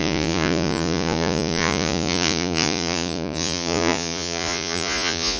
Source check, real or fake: fake